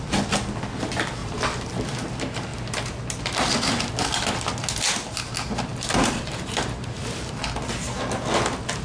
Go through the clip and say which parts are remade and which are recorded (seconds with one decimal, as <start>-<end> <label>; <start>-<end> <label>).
0.0-1.2 recorded; 1.2-1.7 remade; 1.7-5.7 recorded; 5.7-7.4 remade; 7.4-8.8 recorded